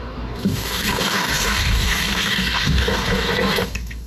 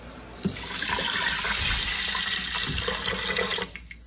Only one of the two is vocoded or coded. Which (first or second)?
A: first